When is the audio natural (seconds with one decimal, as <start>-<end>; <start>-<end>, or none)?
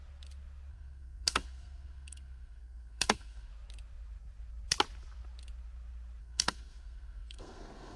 0.0-0.7; 3.5-6.2